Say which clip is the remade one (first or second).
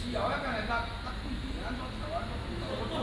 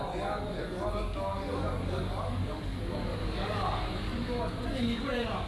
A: second